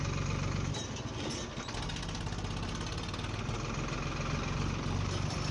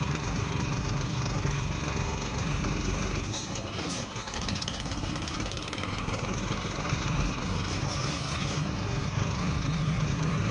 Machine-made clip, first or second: second